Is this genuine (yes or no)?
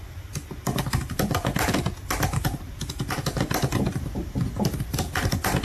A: yes